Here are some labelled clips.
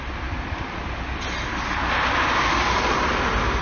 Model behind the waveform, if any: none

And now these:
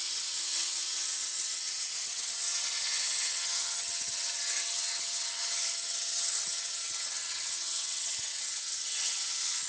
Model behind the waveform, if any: vocoder, HiFi-GAN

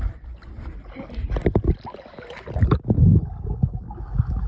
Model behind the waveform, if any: none